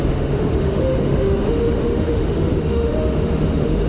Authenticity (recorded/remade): remade